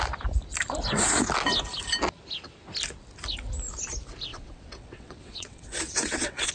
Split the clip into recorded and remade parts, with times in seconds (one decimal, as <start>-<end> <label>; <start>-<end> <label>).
0.0-4.3 recorded; 4.3-6.5 remade